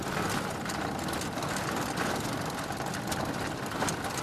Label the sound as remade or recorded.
recorded